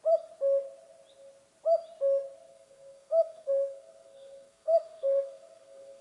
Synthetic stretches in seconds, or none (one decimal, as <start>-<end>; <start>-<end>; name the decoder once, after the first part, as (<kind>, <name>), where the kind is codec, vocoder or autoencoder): 2.5-6.0 (codec, SNAC)